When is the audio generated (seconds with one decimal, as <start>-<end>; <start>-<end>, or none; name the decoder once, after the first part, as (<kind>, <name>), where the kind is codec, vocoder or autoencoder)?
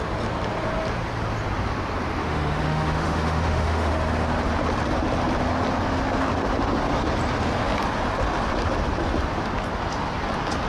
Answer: 2.2-3.9 (autoencoder, DAC-VAE)